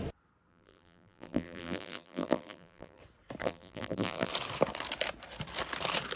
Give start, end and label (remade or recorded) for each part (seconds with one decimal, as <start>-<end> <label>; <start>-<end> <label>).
0.0-0.5 recorded; 0.5-3.0 remade; 3.0-3.4 recorded; 3.4-4.3 remade; 4.3-6.2 recorded